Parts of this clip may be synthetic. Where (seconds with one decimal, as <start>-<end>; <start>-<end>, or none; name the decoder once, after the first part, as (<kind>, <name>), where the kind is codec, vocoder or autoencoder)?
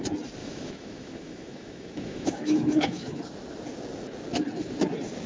0.4-3.2 (autoencoder, DAC-VAE)